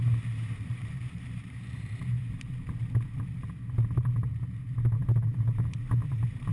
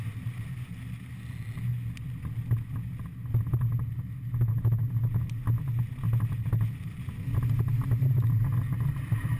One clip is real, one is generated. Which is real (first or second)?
second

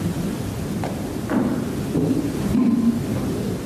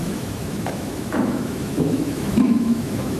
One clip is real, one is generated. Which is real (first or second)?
first